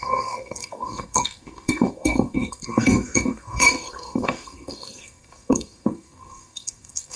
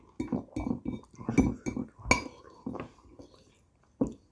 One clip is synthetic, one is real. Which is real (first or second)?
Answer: second